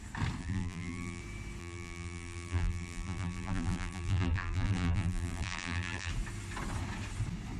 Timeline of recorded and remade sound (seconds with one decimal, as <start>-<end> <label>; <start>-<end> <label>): 0.0-0.4 recorded; 0.4-1.2 remade; 1.2-1.6 recorded; 1.6-6.1 remade; 6.1-7.6 recorded